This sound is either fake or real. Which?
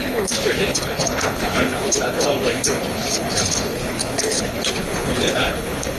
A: fake